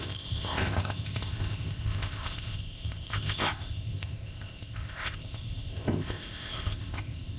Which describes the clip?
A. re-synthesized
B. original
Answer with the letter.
A